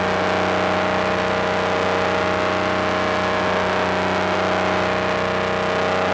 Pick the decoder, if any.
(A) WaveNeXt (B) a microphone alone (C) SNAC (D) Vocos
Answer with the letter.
B